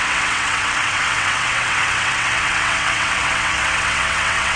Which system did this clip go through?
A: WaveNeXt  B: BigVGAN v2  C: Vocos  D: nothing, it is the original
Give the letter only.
A